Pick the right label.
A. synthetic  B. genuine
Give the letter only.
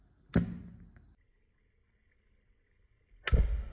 B